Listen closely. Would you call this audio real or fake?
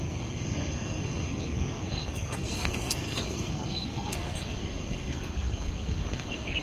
fake